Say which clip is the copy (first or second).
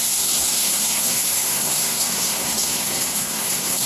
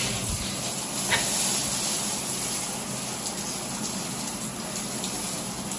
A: first